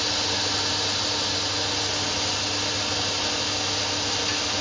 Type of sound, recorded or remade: recorded